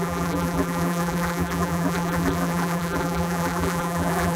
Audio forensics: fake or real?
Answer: fake